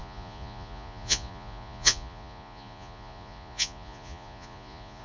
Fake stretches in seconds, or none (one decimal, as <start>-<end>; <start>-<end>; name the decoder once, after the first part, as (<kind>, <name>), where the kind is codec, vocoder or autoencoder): 0.0-5.0 (vocoder, Vocos)